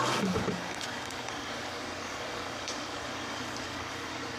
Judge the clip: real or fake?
fake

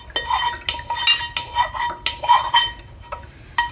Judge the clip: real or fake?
real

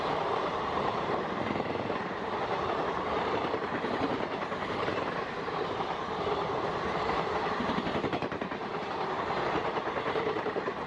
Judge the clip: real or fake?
fake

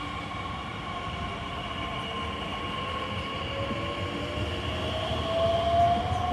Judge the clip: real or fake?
real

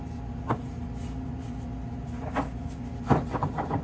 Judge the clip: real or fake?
real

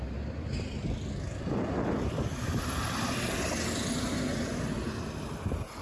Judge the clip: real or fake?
real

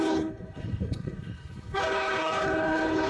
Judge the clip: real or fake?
fake